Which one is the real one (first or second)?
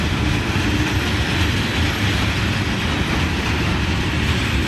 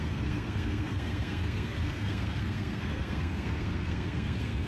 first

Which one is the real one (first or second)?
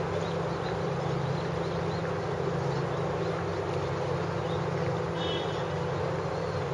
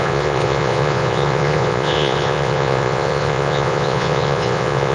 first